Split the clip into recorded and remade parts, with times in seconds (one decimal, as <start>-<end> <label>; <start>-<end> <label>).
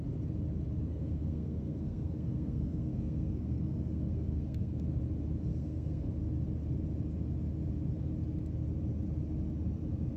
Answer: 0.0-0.9 recorded; 0.9-4.8 remade; 4.8-5.5 recorded; 5.5-6.1 remade; 6.1-10.2 recorded